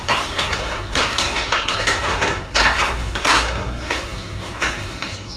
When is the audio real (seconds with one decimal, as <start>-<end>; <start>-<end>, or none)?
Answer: none